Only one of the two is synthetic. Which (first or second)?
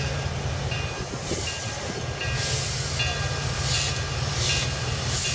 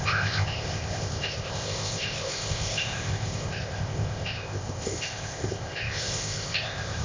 second